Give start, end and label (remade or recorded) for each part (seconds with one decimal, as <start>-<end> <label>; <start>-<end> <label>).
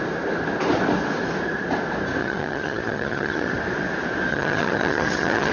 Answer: 0.0-2.2 recorded; 2.2-3.5 remade; 3.5-4.3 recorded; 4.3-5.5 remade